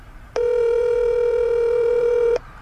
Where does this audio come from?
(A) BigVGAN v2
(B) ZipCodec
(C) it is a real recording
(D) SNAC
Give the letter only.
A